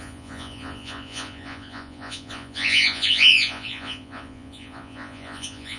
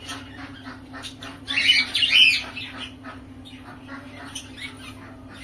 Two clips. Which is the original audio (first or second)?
second